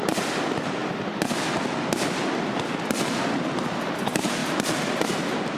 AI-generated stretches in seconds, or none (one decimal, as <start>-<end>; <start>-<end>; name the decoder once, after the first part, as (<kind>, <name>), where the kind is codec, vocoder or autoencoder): 0.0-0.8 (vocoder, BigVGAN v2); 4.0-4.4